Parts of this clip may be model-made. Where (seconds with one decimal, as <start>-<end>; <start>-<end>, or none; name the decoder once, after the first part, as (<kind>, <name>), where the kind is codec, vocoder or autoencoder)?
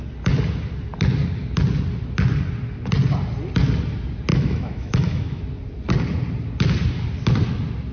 4.3-5.4 (autoencoder, DAC-VAE)